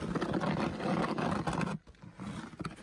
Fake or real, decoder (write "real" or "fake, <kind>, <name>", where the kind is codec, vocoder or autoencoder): real